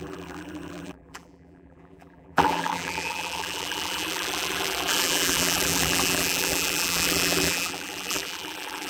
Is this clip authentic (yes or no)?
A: no